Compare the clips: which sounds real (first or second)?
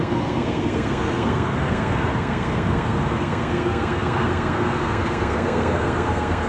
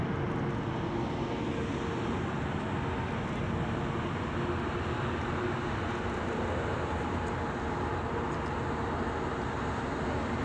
second